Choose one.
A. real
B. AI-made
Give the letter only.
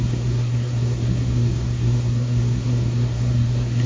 B